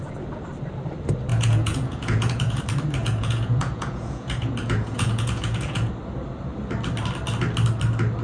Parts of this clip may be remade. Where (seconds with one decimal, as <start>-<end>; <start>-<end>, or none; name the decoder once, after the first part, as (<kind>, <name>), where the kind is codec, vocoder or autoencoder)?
1.3-2.6 (vocoder, Vocos); 3.0-5.9